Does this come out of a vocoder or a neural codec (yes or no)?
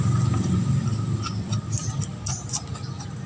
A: no